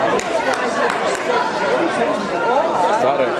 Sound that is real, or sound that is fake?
fake